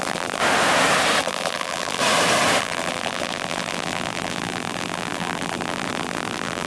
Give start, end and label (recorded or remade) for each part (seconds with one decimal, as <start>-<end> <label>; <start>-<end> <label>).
0.0-0.4 remade; 0.4-1.2 recorded; 1.2-2.0 remade; 2.0-2.6 recorded; 2.6-6.7 remade